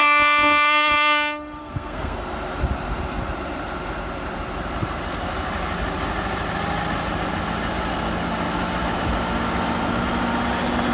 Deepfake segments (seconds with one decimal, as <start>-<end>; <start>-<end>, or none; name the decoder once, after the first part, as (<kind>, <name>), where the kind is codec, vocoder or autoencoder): 1.6-2.3 (codec, SNAC)